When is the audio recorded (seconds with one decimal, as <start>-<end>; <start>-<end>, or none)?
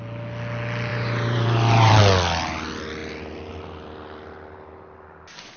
0.0-0.9; 2.0-5.6